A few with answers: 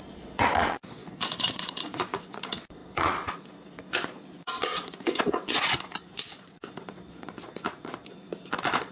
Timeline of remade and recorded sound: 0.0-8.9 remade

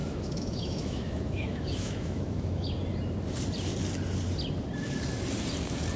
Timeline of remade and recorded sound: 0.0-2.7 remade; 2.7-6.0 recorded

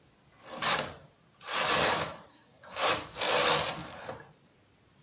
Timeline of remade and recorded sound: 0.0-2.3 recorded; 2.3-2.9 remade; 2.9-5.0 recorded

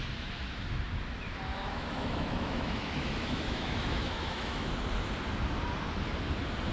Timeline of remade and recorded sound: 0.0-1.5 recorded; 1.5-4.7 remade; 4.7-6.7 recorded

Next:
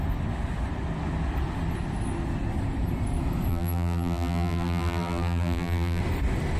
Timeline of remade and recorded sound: 0.0-3.5 recorded; 3.5-6.0 remade; 6.0-6.6 recorded

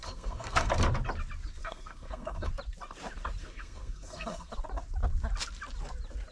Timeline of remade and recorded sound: 0.0-0.7 remade; 0.7-1.6 recorded; 1.6-2.5 remade; 2.5-3.4 recorded; 3.4-4.5 remade; 4.5-6.3 recorded

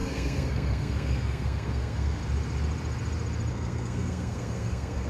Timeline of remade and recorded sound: 0.0-2.2 remade; 2.2-3.5 recorded; 3.5-5.1 remade

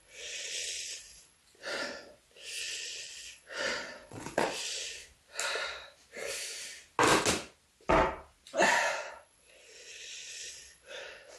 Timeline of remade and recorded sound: 0.0-1.4 remade; 1.4-2.6 recorded; 2.6-5.0 remade; 5.0-9.1 recorded; 9.1-11.4 remade